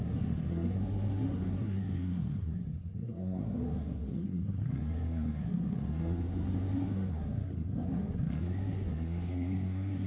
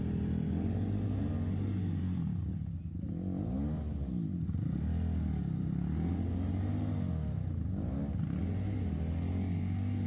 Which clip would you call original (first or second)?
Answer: second